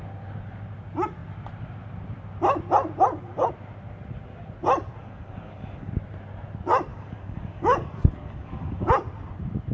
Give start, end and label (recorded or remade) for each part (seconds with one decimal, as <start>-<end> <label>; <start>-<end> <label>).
0.0-5.0 recorded; 5.0-5.9 remade; 5.9-6.9 recorded; 6.9-8.9 remade; 8.9-9.7 recorded